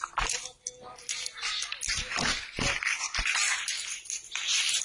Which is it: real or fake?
real